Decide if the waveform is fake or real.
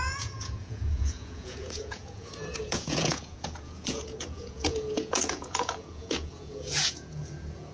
fake